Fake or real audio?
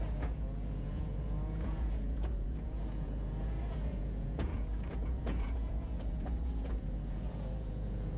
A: fake